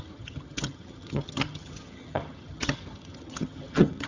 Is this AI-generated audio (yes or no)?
yes